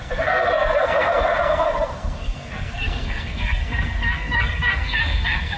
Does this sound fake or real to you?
fake